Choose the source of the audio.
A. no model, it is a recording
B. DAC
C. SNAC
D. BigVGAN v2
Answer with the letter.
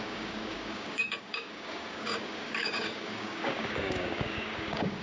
B